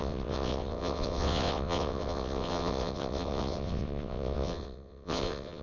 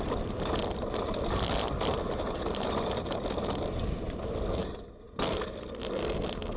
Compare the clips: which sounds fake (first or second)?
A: first